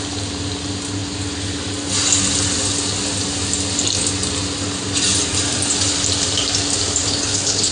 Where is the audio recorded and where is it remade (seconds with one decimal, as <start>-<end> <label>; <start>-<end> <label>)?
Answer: 0.0-7.0 recorded; 7.0-7.7 remade